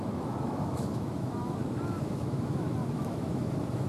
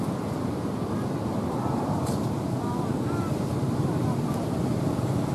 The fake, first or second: first